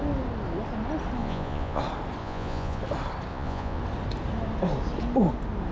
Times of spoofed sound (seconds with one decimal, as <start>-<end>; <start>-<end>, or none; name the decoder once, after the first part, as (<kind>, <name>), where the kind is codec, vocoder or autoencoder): 1.2-1.8 (vocoder, Vocos); 2.2-2.8; 3.3-3.8